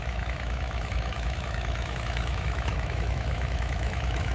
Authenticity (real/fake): fake